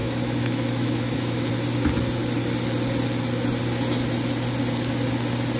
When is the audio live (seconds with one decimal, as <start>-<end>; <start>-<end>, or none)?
1.5-5.6